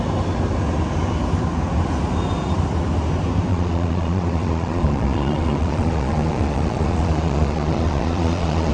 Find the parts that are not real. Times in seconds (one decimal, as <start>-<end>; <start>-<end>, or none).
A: 3.5-8.7

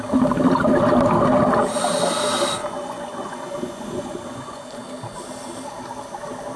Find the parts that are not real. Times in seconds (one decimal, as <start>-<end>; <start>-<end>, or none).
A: 2.6-4.8

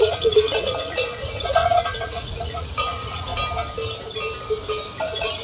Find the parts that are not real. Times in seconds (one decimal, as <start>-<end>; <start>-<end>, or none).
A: 0.0-3.3; 5.0-5.4

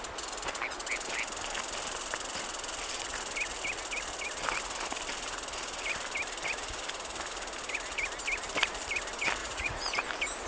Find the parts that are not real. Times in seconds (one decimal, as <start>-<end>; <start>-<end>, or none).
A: 9.4-10.0

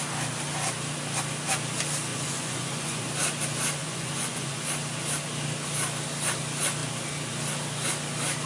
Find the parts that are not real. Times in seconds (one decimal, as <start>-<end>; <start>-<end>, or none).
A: 2.1-3.0; 3.8-4.6